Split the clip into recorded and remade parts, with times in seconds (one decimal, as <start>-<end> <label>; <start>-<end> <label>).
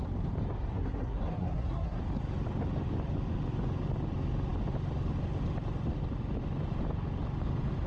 0.0-0.7 recorded; 0.7-2.0 remade; 2.0-7.9 recorded